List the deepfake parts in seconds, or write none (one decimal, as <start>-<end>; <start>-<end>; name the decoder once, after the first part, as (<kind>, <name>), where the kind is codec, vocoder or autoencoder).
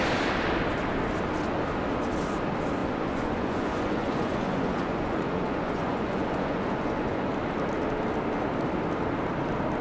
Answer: 2.8-7.3 (vocoder, Vocos)